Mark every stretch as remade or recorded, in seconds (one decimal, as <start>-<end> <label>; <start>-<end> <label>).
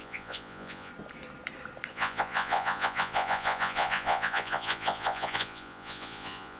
0.0-0.9 remade; 0.9-1.9 recorded; 1.9-6.6 remade